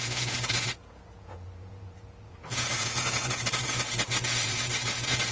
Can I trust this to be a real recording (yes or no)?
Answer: no